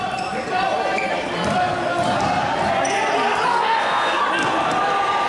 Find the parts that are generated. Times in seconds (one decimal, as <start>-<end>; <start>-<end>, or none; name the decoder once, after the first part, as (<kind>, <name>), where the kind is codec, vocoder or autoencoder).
3.5-4.2 (codec, SNAC)